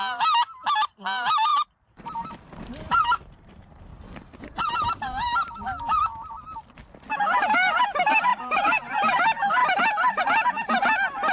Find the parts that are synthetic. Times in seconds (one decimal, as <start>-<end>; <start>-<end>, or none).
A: 1.5-6.0; 8.3-8.9